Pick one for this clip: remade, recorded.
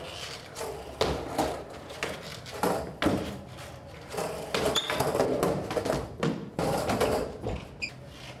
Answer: recorded